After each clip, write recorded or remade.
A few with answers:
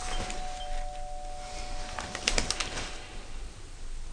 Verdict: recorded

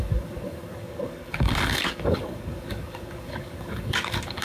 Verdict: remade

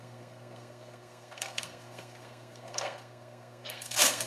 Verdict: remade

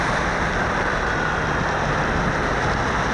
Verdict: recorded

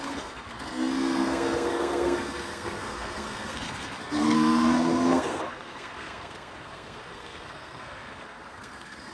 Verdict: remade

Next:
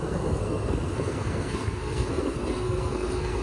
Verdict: remade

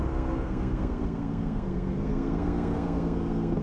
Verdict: remade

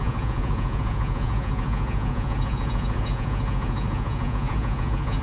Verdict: remade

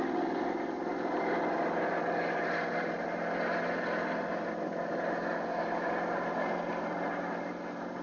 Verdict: recorded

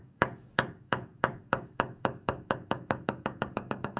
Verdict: remade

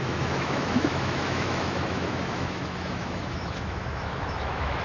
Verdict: remade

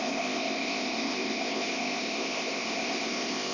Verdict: remade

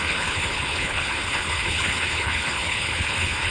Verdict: remade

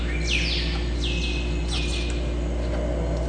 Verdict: recorded